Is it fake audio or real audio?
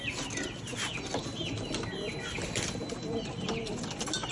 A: real